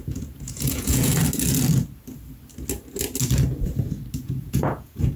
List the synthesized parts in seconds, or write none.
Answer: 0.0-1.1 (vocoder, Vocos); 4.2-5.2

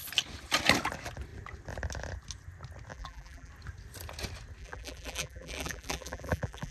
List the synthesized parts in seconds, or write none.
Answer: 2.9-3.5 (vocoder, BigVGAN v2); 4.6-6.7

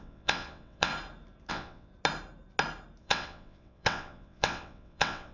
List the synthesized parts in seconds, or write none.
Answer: 0.0-0.9 (vocoder, WaveNeXt); 1.5-1.9; 3.0-5.3

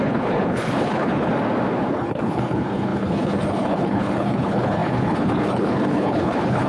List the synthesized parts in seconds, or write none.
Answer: 0.0-1.3 (codec, HILCodec); 1.9-6.7

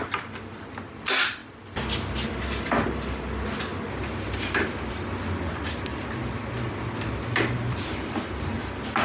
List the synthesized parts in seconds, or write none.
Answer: none

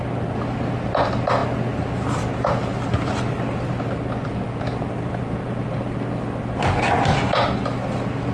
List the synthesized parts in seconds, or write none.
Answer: none